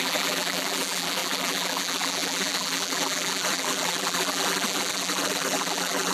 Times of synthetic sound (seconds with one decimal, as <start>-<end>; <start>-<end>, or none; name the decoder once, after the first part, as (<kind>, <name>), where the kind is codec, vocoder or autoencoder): 0.0-6.1 (vocoder, BigVGAN v2)